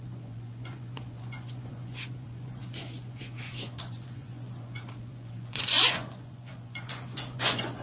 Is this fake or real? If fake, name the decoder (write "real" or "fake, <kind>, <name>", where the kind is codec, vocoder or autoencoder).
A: fake, vocoder, Vocos